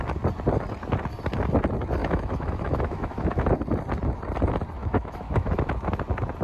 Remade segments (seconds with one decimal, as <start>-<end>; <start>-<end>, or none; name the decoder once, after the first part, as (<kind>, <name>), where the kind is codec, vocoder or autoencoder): 2.0-3.6 (autoencoder, DAC-VAE); 4.8-5.9